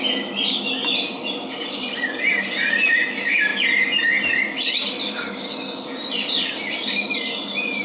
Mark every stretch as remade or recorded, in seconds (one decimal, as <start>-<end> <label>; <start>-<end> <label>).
0.0-3.5 remade; 3.5-4.8 recorded; 4.8-7.8 remade